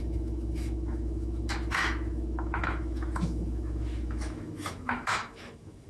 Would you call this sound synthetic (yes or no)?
yes